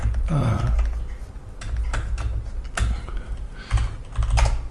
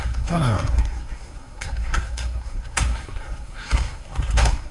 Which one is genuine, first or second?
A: first